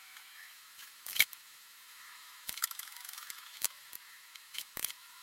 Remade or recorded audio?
remade